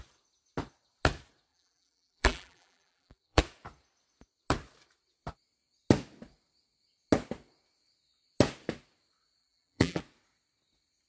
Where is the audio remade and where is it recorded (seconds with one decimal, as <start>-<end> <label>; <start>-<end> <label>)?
0.0-1.5 recorded; 1.5-3.4 remade; 3.4-9.4 recorded; 9.4-10.0 remade; 10.0-11.1 recorded